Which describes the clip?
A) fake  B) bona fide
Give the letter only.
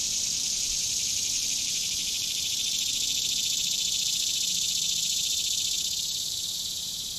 A